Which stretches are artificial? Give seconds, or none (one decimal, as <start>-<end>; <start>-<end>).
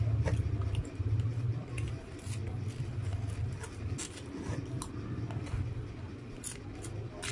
none